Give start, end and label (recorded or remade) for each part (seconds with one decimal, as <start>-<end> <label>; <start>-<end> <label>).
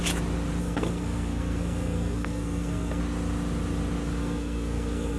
0.0-0.6 recorded; 0.6-3.0 remade; 3.0-4.2 recorded; 4.2-5.2 remade